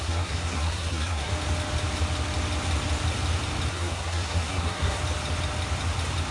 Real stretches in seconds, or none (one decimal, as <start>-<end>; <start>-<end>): 1.3-3.7; 5.0-6.3